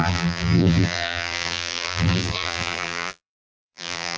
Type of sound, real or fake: fake